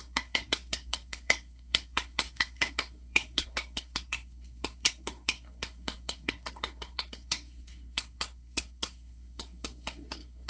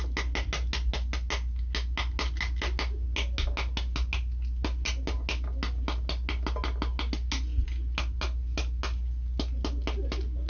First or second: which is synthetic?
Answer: first